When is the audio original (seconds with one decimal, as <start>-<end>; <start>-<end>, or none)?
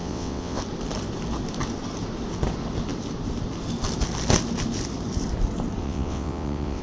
0.6-5.8